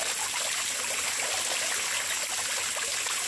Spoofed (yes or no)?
no